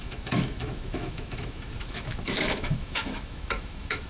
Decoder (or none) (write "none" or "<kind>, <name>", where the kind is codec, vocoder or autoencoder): autoencoder, DAC-VAE